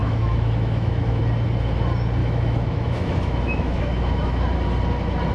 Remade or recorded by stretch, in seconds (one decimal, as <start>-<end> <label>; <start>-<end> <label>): 0.0-1.2 remade; 1.2-2.2 recorded; 2.2-4.4 remade; 4.4-5.3 recorded